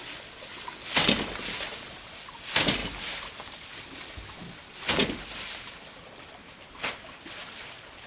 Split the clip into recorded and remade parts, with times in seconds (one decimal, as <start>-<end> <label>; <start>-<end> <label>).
0.0-8.1 recorded